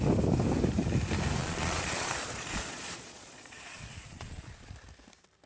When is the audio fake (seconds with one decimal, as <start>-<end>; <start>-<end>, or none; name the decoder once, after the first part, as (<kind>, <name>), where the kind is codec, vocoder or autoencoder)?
1.4-4.7 (vocoder, Vocos)